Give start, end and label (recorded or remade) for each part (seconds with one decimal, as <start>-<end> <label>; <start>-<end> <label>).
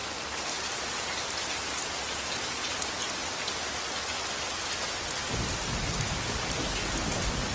0.0-7.5 recorded